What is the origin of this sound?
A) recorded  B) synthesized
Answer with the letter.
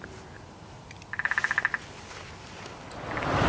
A